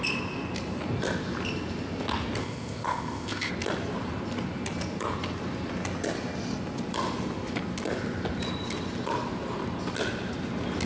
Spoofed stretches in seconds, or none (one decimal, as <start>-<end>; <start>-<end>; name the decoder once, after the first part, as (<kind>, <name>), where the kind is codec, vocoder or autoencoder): 2.4-3.5 (codec, ZipCodec)